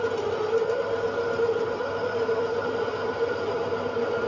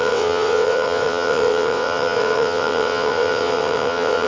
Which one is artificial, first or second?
second